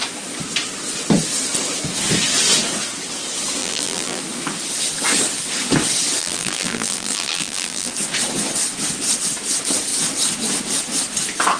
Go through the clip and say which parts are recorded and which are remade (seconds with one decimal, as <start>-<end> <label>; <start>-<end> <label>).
0.0-3.6 recorded; 3.6-4.2 remade; 4.2-6.2 recorded; 6.2-7.9 remade; 7.9-11.6 recorded